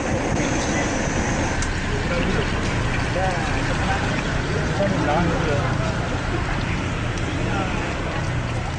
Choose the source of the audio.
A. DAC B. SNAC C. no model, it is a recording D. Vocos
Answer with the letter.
C